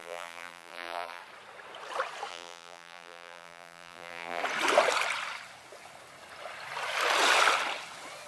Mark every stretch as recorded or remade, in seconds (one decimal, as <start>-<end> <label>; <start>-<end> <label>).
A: 0.0-1.2 remade; 1.2-2.3 recorded; 2.3-4.4 remade; 4.4-8.3 recorded